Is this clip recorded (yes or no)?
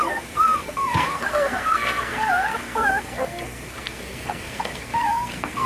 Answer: no